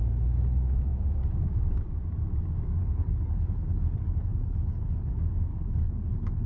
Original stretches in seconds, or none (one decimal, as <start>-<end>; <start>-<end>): 0.0-2.8; 5.1-5.5